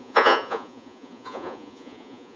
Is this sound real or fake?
fake